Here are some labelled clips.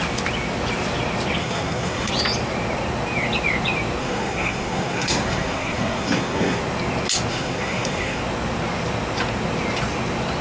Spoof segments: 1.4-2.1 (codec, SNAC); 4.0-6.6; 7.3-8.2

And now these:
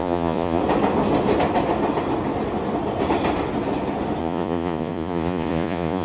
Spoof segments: 0.0-0.6 (vocoder, Vocos); 4.2-6.0

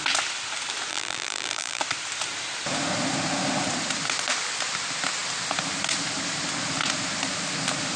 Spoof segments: 0.9-1.8 (vocoder, BigVGAN v2)